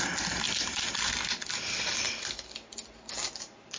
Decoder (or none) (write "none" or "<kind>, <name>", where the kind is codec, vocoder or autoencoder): none